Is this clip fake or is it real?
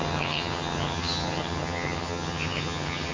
fake